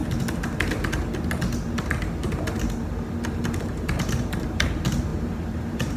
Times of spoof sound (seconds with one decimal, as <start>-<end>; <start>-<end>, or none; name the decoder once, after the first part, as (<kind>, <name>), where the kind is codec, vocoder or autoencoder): 3.6-6.0 (vocoder, BigVGAN v2)